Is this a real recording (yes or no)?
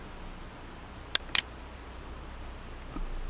yes